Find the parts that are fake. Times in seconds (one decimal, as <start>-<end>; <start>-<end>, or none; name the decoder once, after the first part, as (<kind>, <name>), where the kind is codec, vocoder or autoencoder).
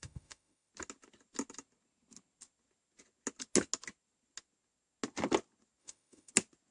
0.0-0.7 (autoencoder, DAC-VAE); 5.8-6.3